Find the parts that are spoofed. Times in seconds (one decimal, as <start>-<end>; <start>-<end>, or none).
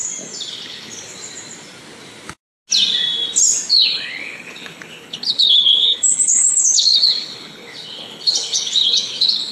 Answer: 0.5-1.2; 3.7-9.5